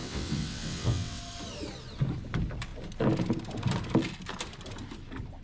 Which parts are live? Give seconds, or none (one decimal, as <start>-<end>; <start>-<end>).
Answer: 1.2-5.4